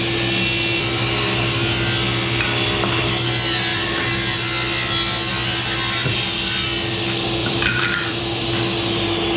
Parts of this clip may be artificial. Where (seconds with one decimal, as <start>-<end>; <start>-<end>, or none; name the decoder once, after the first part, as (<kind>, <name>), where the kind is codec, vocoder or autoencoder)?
7.4-8.2 (vocoder, BigVGAN v2)